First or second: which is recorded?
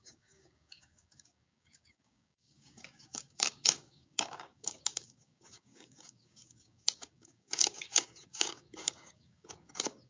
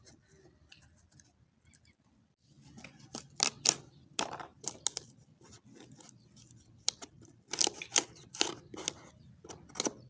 second